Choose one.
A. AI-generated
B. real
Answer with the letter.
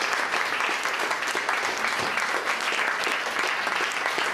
B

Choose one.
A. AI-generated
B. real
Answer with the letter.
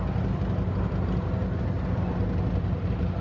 B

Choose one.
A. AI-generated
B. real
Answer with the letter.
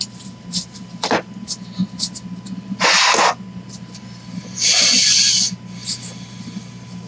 B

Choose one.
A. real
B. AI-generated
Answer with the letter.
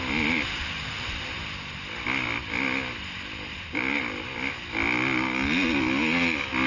A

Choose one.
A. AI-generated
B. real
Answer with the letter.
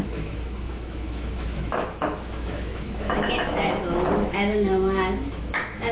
A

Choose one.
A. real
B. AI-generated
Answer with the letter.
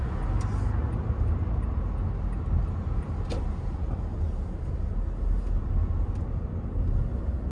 A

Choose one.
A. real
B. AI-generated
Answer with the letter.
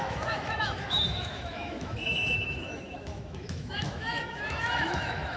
B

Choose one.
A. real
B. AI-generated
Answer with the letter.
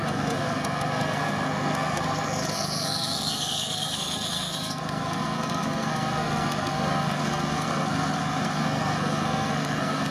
B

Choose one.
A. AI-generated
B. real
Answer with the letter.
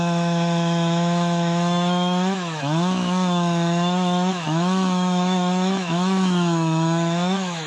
A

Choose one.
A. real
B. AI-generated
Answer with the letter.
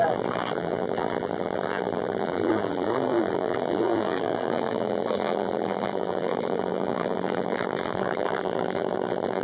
B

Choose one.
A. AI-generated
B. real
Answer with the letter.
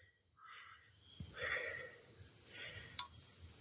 B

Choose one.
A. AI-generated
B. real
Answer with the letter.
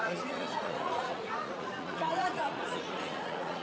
A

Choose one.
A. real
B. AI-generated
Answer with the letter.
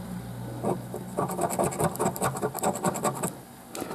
A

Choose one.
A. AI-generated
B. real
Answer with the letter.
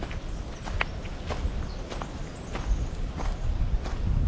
B